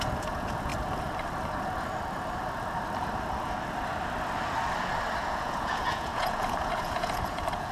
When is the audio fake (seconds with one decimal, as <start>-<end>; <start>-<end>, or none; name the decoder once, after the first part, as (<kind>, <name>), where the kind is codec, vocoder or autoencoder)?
0.0-0.7 (vocoder, Vocos); 5.2-7.7

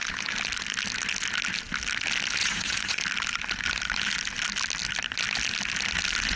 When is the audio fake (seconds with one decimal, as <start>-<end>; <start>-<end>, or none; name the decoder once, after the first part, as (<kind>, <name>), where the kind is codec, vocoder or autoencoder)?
2.4-3.0 (vocoder, Vocos)

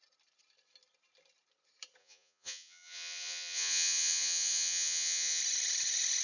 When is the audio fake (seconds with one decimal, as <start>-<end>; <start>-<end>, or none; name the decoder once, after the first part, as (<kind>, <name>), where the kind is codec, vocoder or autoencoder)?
2.0-5.4 (vocoder, Vocos)

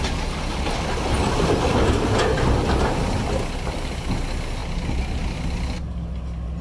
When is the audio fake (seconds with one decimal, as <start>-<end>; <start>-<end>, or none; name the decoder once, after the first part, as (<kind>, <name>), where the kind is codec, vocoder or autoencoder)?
none

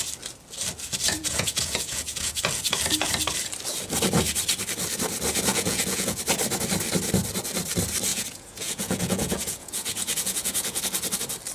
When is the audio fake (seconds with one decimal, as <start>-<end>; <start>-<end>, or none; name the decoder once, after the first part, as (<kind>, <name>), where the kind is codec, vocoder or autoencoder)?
1.2-2.4 (vocoder, Vocos); 5.5-6.2; 8.1-10.8

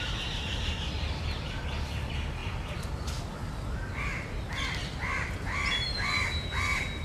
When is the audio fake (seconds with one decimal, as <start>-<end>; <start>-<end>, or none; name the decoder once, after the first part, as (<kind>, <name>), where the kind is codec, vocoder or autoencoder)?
none

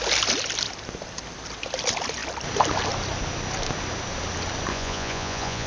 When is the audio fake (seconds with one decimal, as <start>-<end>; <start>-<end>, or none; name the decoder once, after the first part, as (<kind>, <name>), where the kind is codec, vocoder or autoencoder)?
4.7-5.7 (vocoder, Vocos)

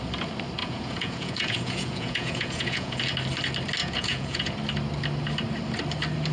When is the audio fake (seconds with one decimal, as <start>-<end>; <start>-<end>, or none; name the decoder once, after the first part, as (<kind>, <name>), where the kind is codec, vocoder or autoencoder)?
0.6-3.0 (vocoder, Vocos); 3.8-4.5